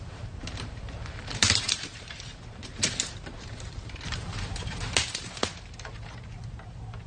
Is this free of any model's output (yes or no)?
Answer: no